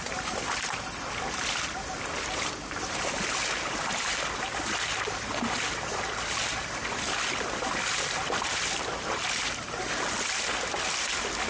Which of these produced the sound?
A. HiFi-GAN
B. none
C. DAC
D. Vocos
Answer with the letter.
B